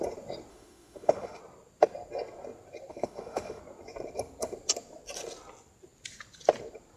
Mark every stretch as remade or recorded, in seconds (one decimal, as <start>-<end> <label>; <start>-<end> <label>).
0.0-0.5 recorded; 0.5-1.4 remade; 1.4-2.9 recorded; 2.9-3.6 remade; 3.6-7.0 recorded